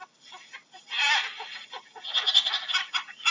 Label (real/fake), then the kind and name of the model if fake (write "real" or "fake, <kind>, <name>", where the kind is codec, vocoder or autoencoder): real